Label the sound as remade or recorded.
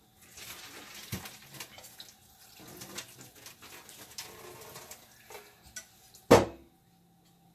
recorded